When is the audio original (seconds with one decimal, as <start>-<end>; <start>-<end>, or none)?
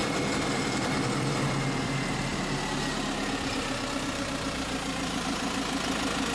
1.5-6.3